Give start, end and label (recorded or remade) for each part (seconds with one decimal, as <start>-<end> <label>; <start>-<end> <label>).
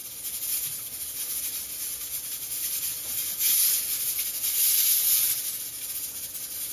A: 0.0-6.7 recorded